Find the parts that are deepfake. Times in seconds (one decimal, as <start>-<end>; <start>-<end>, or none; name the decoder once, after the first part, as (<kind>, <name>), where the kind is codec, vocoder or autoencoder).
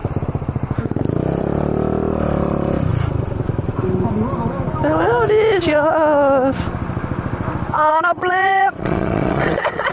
7.9-9.9 (vocoder, WaveNeXt)